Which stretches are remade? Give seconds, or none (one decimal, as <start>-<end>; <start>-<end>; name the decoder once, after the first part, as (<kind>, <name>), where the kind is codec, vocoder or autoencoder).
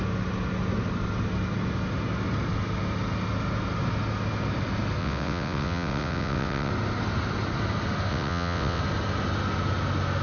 5.0-6.7 (vocoder, WaveNeXt); 8.1-8.8